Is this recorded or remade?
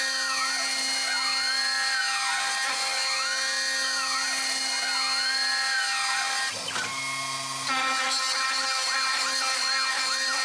recorded